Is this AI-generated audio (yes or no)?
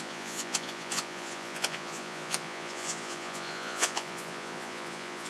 yes